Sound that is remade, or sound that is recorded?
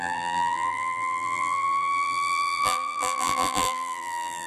remade